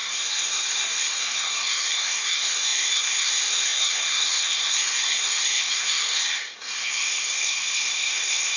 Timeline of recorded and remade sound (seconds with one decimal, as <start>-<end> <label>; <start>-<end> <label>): 0.0-8.6 remade